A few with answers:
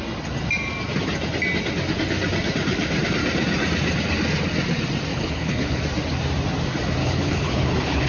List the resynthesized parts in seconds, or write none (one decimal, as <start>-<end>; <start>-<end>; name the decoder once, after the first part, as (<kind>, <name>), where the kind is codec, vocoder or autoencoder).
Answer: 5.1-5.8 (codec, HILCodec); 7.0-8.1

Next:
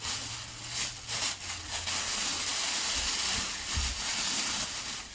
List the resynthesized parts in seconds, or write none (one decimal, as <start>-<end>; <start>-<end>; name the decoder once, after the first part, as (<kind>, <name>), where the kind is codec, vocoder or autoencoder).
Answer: none

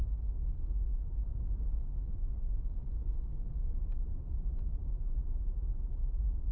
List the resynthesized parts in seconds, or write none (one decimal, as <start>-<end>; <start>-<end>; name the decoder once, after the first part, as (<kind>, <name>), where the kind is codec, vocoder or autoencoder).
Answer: 4.0-6.5 (vocoder, BigVGAN v2)

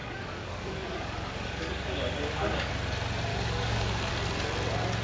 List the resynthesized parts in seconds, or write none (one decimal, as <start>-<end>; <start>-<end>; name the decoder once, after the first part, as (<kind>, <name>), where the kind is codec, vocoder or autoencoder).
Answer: 0.0-2.7 (codec, DAC); 3.3-4.1

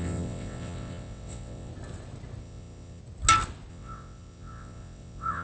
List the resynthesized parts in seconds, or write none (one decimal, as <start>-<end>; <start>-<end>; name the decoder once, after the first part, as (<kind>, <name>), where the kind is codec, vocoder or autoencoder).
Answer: 0.0-1.7 (vocoder, WaveNeXt); 2.4-3.0; 3.7-5.4

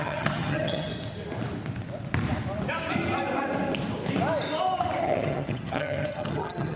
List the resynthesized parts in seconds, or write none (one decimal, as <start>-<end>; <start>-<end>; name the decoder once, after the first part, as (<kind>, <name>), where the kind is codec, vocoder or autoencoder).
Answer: 0.0-0.9 (vocoder, HiFi-GAN); 5.0-6.8

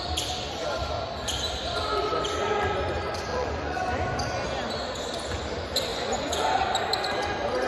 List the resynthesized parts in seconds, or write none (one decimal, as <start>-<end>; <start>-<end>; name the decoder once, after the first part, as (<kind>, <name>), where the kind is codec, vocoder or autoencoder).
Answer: 3.3-3.8 (vocoder, Vocos); 5.9-6.6

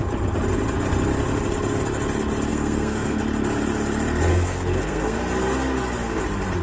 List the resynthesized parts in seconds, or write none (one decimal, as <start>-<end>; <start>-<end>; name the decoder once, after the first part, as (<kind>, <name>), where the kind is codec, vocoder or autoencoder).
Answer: 2.5-3.2 (codec, SNAC); 4.3-5.2